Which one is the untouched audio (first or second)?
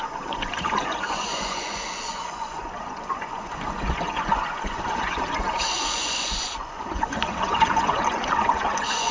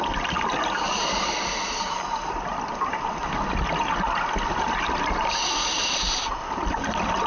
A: second